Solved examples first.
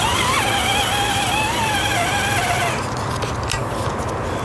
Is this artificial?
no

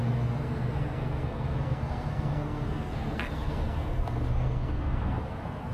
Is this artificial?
yes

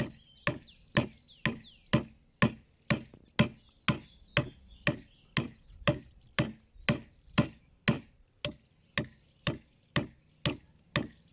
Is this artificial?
no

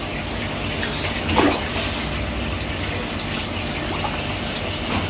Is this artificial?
no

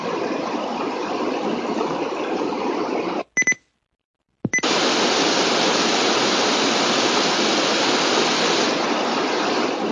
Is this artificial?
no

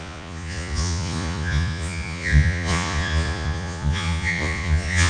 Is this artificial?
yes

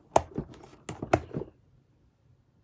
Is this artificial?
no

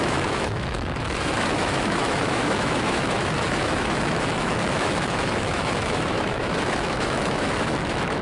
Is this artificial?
yes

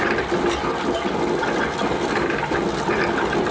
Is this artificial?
no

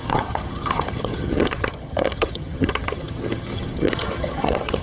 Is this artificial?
yes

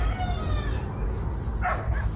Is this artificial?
no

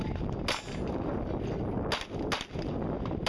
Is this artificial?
no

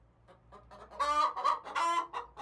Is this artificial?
no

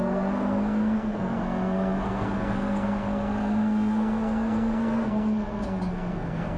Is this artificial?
yes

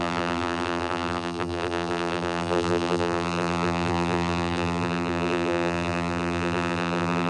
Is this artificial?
yes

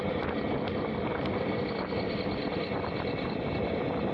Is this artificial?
no